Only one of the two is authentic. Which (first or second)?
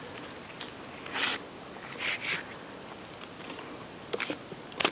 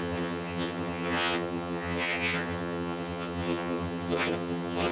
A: first